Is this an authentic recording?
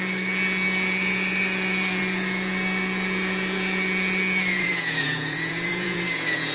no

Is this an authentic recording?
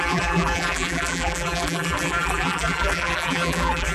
no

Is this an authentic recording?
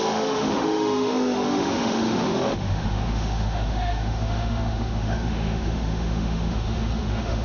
no